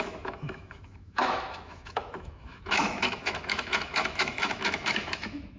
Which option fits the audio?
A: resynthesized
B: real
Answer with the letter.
A